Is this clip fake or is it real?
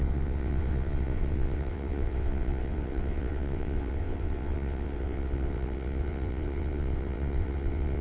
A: fake